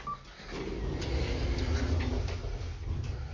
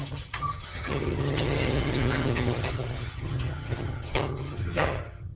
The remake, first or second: second